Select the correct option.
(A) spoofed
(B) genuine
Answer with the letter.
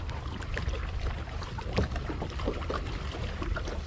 A